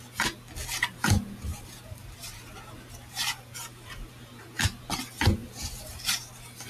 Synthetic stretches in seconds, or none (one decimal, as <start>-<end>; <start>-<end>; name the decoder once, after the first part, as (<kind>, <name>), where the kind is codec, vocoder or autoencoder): 1.5-4.8 (vocoder, BigVGAN v2); 5.4-6.2